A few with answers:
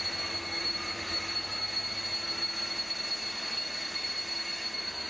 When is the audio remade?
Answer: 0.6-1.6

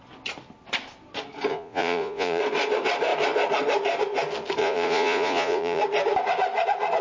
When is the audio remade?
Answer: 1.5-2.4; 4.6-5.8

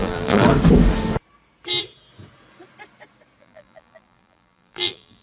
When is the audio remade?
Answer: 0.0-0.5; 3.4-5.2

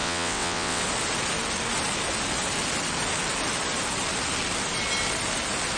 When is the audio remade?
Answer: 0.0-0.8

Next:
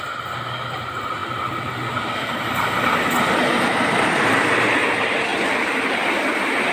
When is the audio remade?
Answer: 1.2-4.5; 5.3-5.8

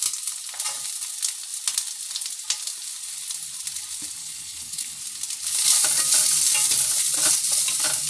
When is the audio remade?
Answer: 4.2-5.0